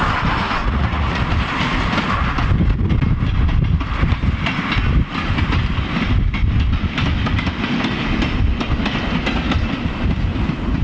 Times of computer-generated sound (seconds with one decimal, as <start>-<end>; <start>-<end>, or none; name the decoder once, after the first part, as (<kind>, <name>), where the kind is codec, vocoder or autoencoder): 0.6-1.2 (vocoder, Vocos)

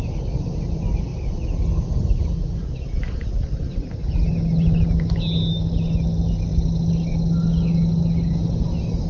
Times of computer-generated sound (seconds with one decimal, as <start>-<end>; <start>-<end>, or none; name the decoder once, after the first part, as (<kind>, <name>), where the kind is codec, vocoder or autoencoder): none